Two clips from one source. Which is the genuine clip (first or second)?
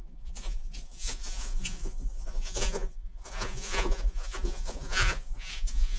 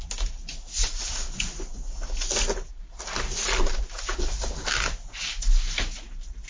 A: second